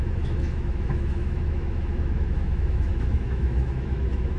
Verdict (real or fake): fake